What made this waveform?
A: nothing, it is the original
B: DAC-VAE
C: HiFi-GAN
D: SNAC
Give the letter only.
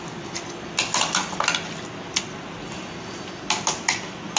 A